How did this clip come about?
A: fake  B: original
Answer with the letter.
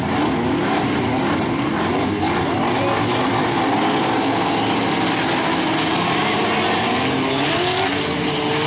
B